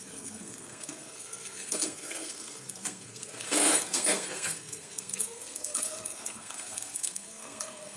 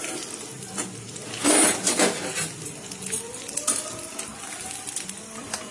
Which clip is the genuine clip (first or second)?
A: second